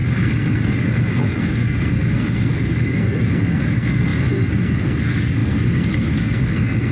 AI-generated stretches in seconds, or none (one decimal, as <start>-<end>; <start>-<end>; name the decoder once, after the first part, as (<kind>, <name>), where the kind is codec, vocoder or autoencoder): 0.0-6.9 (codec, SNAC)